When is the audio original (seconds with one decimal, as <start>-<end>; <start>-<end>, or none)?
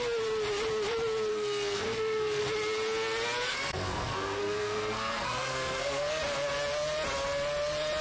0.0-1.3; 2.4-3.5; 6.2-8.0